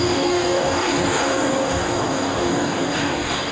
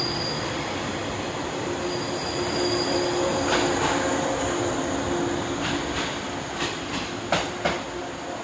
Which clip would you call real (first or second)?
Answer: second